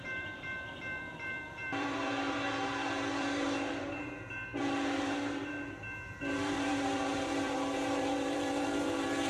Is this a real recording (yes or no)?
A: no